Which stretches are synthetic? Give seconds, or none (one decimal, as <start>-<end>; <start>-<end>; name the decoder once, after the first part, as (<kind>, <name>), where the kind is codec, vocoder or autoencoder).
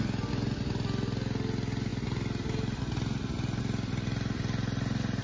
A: none